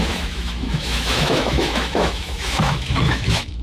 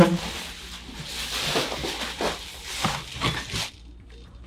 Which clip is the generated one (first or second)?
first